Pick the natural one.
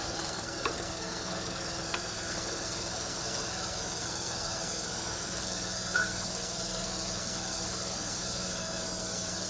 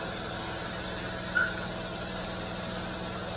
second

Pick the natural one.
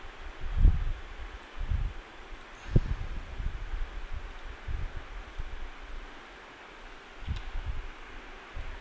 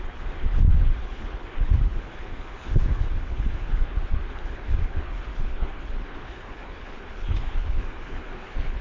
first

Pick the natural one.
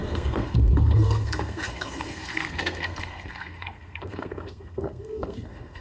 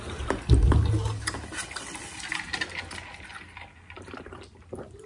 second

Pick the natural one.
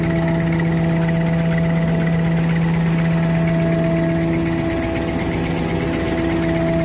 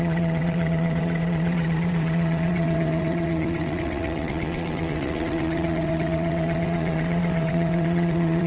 first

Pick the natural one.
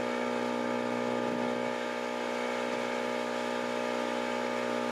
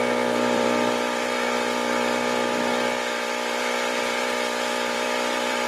first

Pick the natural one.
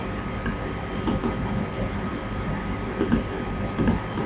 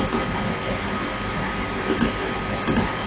second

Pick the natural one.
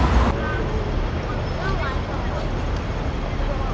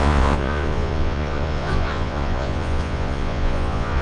first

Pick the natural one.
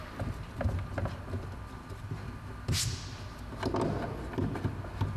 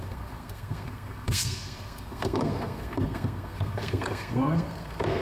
first